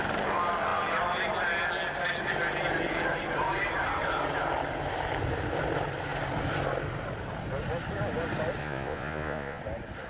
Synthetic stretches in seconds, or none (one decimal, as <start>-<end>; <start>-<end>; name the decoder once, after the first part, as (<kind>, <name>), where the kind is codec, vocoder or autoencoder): 8.6-9.6 (vocoder, Vocos)